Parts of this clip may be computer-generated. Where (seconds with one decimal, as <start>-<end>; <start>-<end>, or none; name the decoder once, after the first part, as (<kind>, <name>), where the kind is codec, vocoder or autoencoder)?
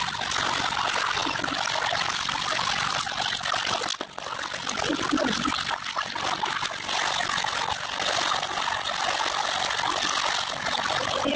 none